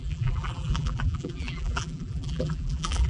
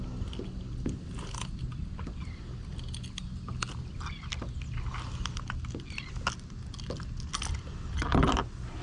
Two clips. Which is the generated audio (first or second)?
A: first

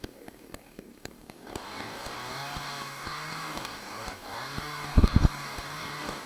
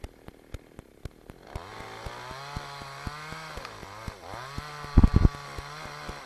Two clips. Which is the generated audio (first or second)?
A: first